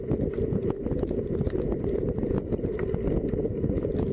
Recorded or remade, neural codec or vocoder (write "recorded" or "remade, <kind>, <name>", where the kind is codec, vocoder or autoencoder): recorded